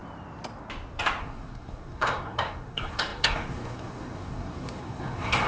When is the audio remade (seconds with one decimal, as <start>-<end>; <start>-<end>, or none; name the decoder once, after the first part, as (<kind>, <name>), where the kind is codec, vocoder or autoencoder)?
1.2-5.5 (codec, SNAC)